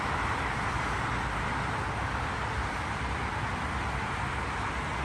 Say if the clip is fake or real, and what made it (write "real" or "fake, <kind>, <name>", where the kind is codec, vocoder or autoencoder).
real